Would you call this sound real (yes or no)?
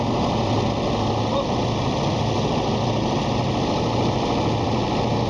yes